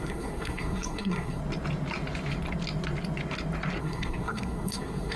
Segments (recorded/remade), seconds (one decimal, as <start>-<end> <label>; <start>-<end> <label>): 0.0-1.4 remade; 1.4-3.8 recorded; 3.8-5.2 remade